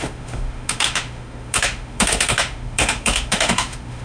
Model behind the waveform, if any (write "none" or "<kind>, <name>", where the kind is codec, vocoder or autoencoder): autoencoder, DAC-VAE